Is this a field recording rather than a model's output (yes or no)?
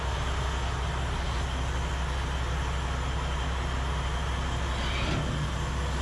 yes